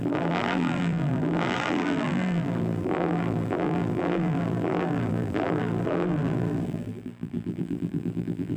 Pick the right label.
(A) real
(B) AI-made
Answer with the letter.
B